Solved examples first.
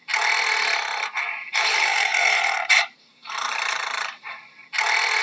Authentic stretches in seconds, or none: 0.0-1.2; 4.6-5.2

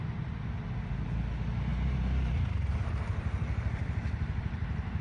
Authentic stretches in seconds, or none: 0.0-1.7

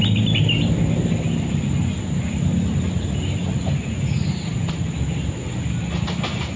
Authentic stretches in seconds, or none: 0.0-6.6

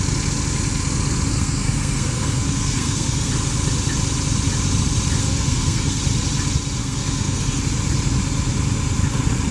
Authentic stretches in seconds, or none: 0.0-1.3; 3.3-5.2; 6.0-6.8; 7.6-9.5